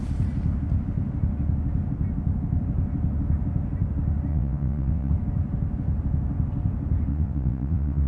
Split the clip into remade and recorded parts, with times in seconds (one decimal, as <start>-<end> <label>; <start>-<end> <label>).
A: 0.0-4.3 recorded; 4.3-5.1 remade; 5.1-7.1 recorded; 7.1-8.1 remade